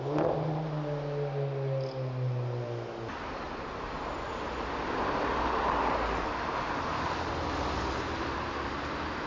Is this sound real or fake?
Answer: real